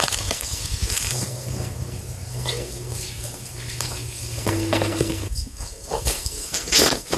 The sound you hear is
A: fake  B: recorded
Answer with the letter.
A